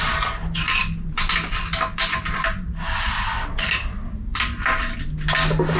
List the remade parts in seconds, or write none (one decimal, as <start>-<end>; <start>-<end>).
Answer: none